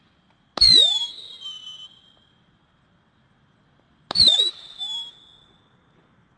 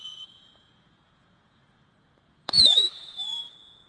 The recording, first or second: first